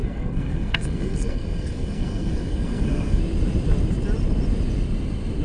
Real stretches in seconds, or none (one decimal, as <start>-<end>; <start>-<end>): 3.2-5.4